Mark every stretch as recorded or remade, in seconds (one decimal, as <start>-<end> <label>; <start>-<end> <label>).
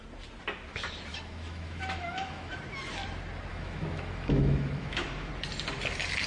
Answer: 0.0-1.1 recorded; 1.1-2.6 remade; 2.6-3.5 recorded; 3.5-5.3 remade; 5.3-6.3 recorded